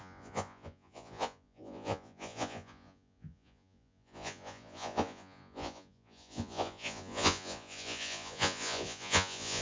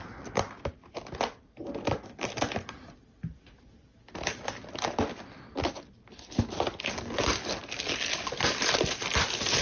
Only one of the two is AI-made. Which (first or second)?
first